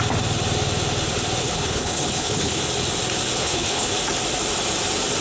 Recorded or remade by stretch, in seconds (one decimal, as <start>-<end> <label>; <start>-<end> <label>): 0.0-1.4 recorded; 1.4-2.6 remade; 2.6-3.4 recorded; 3.4-3.9 remade; 3.9-5.2 recorded